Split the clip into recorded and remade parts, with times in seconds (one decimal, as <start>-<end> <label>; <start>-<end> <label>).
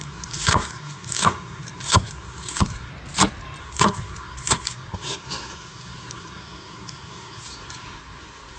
0.0-2.9 remade; 2.9-3.6 recorded; 3.6-8.6 remade